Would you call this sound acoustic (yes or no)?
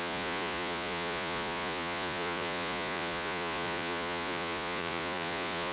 no